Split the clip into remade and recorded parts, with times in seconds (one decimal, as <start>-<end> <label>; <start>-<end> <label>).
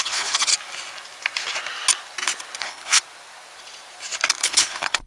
0.0-0.5 remade; 0.5-2.6 recorded; 2.6-3.0 remade; 3.0-4.4 recorded; 4.4-5.1 remade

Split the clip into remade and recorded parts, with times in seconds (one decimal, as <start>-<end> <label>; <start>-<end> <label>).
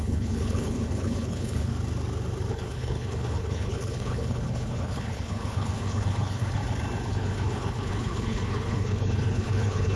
0.0-1.7 remade; 1.7-2.5 recorded; 2.5-6.6 remade; 6.6-7.1 recorded; 7.1-10.0 remade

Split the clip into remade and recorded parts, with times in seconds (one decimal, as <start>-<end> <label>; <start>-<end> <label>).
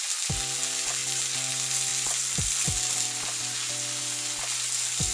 0.0-5.1 recorded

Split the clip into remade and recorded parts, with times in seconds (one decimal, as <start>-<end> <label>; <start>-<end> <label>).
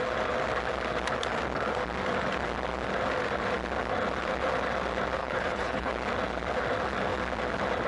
0.0-5.2 recorded; 5.2-5.9 remade; 5.9-7.9 recorded